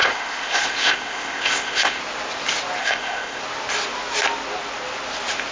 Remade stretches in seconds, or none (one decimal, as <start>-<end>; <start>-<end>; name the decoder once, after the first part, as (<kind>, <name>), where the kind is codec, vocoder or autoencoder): 0.0-2.0 (codec, ZipCodec); 2.8-3.4

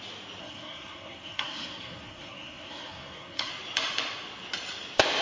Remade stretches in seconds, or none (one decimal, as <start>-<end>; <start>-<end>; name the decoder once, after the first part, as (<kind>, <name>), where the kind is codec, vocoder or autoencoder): 0.4-3.5 (codec, SNAC)